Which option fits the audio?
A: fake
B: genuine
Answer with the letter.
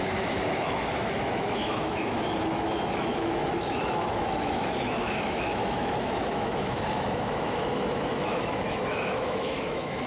A